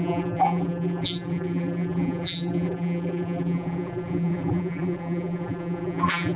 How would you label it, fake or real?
fake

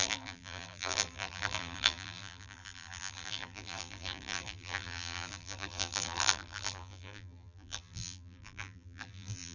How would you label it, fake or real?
fake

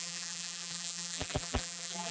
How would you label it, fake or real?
fake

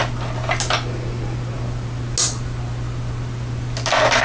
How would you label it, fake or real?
real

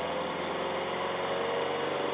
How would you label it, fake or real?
real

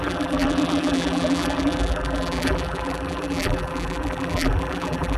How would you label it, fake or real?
fake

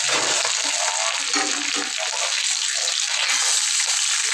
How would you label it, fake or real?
real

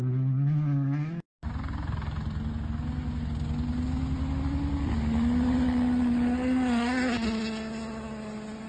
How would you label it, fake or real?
real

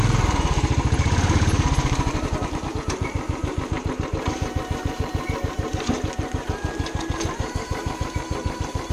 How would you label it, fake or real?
fake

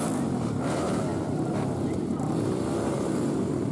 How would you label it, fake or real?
fake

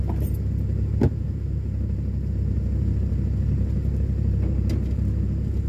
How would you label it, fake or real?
real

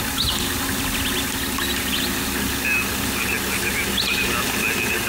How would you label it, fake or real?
real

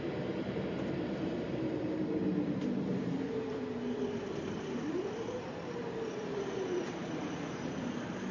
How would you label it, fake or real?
fake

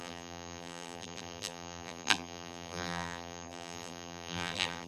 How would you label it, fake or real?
fake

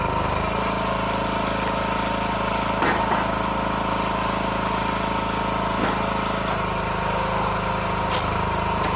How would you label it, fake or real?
real